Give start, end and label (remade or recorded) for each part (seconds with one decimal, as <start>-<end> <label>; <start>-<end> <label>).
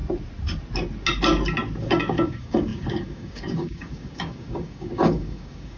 0.0-1.8 recorded; 1.8-5.8 remade